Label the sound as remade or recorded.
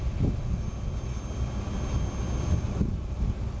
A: recorded